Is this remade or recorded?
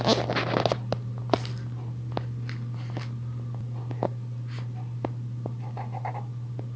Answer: recorded